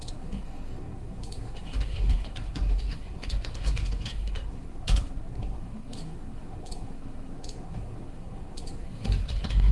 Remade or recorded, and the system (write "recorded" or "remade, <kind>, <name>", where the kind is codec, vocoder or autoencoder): remade, codec, SNAC